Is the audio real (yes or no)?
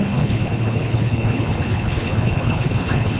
no